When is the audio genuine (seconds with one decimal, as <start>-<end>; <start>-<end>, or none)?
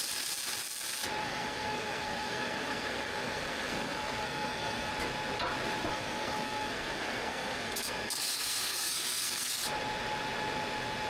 0.0-1.2; 4.9-5.9; 9.6-11.1